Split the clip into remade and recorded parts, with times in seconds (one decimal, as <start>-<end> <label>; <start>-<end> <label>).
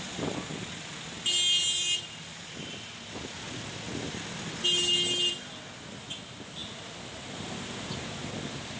0.0-8.8 recorded